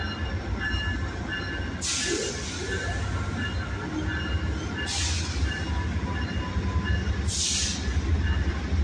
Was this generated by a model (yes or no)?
no